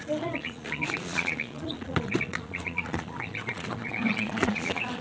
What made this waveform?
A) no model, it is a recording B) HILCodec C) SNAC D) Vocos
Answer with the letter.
D